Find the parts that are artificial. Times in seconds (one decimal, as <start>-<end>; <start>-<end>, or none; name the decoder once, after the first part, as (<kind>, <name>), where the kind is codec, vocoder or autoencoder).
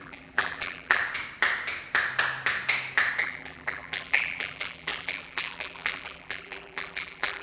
0.0-1.0 (vocoder, BigVGAN v2); 3.2-7.4